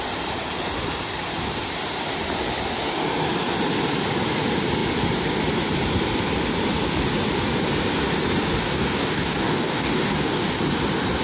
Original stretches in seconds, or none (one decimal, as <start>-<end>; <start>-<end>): 0.0-8.6; 10.6-11.2